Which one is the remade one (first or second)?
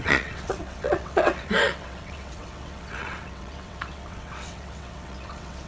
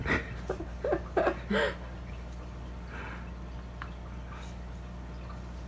first